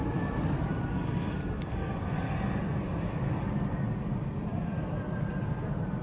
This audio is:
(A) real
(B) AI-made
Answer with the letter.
A